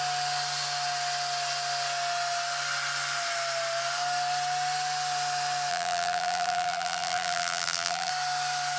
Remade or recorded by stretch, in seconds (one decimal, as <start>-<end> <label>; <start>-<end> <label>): 0.0-5.7 recorded; 5.7-8.1 remade; 8.1-8.8 recorded